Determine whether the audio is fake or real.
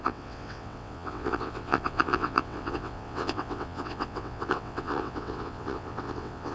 fake